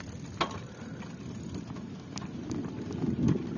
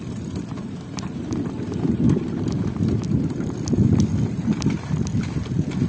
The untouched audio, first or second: first